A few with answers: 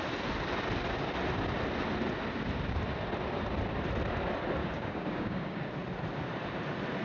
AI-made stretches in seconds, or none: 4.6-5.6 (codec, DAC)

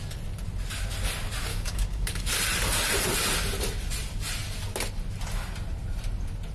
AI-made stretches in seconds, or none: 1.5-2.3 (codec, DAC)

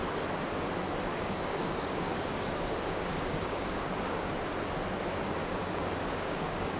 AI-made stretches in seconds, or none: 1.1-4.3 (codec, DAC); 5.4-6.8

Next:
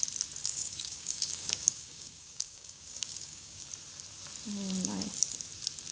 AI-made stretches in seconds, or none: 0.4-3.7 (codec, DAC)